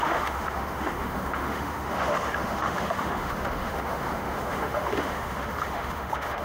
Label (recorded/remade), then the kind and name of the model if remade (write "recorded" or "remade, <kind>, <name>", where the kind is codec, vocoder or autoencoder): remade, autoencoder, DAC-VAE